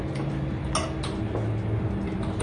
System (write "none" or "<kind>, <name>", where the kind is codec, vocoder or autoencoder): none